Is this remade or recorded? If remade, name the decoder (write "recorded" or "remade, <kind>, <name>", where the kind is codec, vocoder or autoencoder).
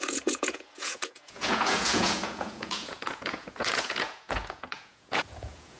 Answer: remade, vocoder, Vocos